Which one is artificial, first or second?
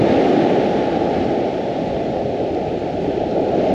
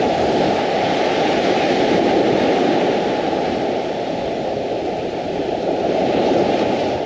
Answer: second